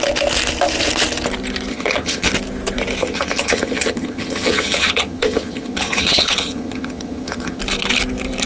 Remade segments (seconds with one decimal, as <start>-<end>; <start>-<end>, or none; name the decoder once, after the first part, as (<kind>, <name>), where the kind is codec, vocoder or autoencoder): 1.7-2.3 (vocoder, HiFi-GAN); 3.0-7.6